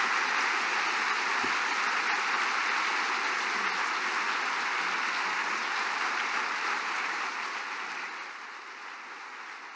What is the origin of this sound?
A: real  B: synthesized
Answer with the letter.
A